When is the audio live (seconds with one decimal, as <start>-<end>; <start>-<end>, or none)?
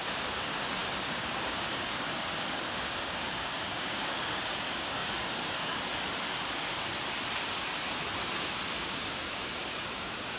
5.9-8.7